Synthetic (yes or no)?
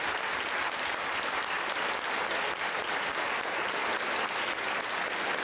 no